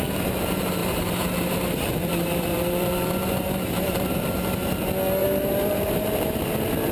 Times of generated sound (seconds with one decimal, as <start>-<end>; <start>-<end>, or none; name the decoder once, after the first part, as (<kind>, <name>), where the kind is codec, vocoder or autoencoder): 0.8-4.3 (vocoder, BigVGAN v2); 5.2-6.4